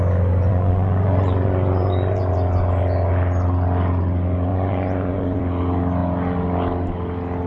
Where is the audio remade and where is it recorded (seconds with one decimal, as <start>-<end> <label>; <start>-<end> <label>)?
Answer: 0.0-0.5 recorded; 0.5-2.3 remade; 2.3-4.5 recorded; 4.5-5.4 remade; 5.4-7.5 recorded